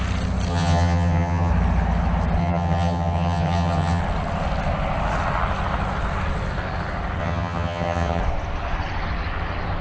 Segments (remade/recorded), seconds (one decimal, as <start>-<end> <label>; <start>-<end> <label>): 0.0-0.5 recorded; 0.5-1.5 remade; 1.5-2.4 recorded; 2.4-4.0 remade; 4.0-7.2 recorded; 7.2-8.2 remade; 8.2-9.8 recorded